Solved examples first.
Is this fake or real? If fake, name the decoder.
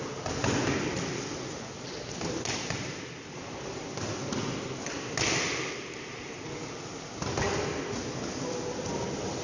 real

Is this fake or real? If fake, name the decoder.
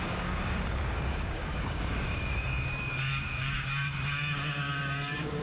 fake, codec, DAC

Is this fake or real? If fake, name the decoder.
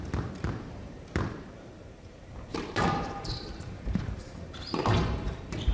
fake, vocoder, BigVGAN v2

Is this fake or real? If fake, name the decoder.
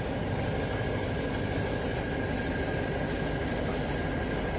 real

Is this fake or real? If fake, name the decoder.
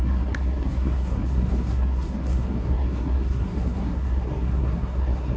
fake, codec, SNAC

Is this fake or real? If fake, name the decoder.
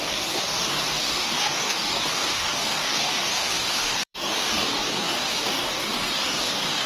fake, codec, DAC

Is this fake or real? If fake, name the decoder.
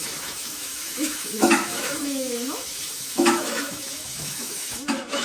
fake, autoencoder, DAC-VAE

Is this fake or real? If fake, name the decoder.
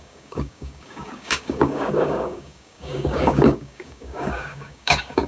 fake, codec, DAC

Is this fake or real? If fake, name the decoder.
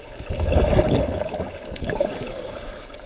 fake, codec, DAC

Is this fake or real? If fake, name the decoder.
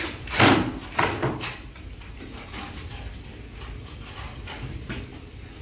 fake, vocoder, BigVGAN v2